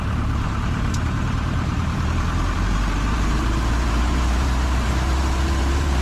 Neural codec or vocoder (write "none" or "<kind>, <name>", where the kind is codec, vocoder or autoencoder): vocoder, BigVGAN v2